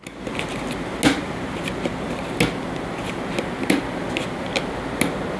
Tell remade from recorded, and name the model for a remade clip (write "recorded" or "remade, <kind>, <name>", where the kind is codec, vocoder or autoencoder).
recorded